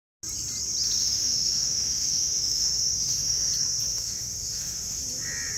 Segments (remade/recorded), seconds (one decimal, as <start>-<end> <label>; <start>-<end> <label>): 0.0-1.0 recorded; 1.0-3.5 remade; 3.5-3.9 recorded; 3.9-5.0 remade; 5.0-5.6 recorded